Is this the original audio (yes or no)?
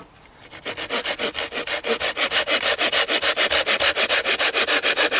yes